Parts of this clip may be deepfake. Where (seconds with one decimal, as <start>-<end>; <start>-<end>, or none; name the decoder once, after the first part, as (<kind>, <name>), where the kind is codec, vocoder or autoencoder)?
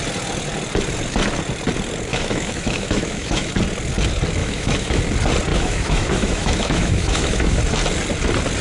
2.1-3.5 (autoencoder, DAC-VAE); 4.4-5.0; 5.5-7.6